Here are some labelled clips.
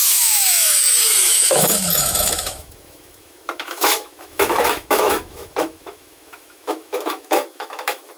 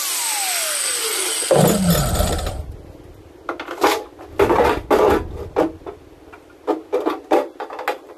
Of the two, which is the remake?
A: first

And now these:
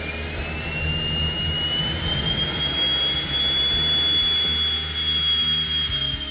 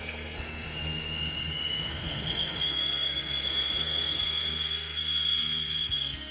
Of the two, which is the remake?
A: second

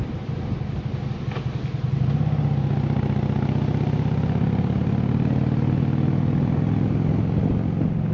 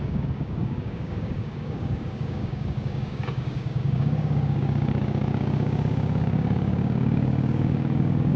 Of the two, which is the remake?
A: second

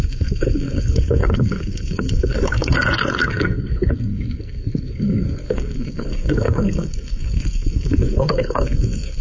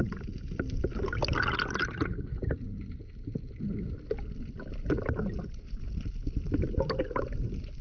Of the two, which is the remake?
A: first